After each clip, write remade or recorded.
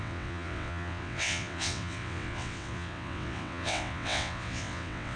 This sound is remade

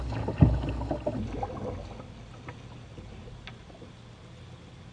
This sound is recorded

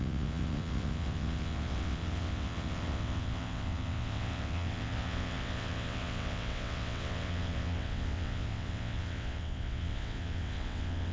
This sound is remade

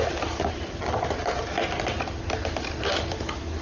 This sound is recorded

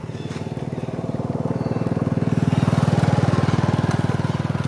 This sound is recorded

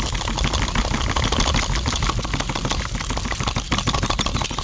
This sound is recorded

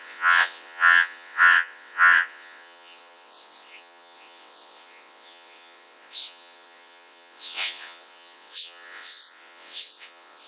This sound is remade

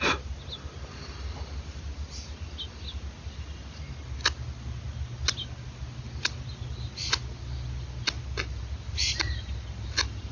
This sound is recorded